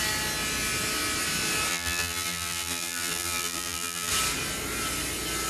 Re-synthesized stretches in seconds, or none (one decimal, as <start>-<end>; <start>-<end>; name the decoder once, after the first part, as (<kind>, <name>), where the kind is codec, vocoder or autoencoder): 1.7-4.1 (vocoder, BigVGAN v2)